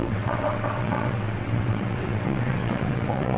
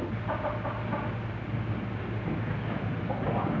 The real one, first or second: second